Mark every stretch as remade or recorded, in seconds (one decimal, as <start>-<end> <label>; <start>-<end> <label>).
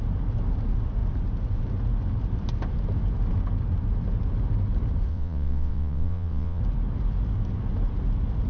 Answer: 0.0-5.1 recorded; 5.1-6.6 remade; 6.6-8.5 recorded